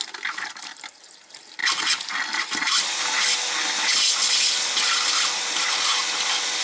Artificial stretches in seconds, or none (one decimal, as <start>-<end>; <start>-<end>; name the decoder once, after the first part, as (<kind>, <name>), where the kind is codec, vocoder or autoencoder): none